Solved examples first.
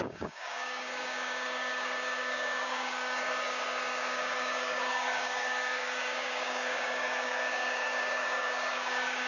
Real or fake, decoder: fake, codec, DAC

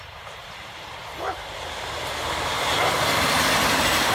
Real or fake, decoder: fake, vocoder, BigVGAN v2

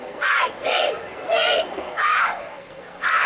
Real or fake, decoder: fake, codec, SNAC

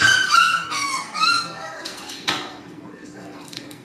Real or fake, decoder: fake, codec, SNAC